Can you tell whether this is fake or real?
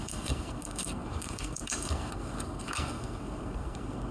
fake